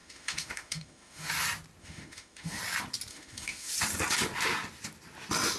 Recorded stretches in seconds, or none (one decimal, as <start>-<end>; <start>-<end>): 1.3-1.8; 2.6-3.1; 3.7-5.6